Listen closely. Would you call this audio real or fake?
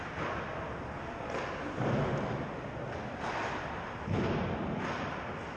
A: real